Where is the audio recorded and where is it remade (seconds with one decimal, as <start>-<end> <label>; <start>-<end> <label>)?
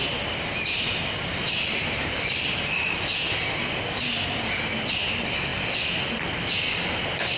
0.0-7.4 recorded